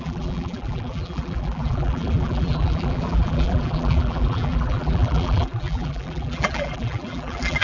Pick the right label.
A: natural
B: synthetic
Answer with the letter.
B